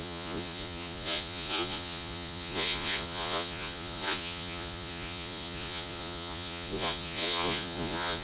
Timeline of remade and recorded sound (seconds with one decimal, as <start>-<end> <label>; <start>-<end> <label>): 0.0-8.2 remade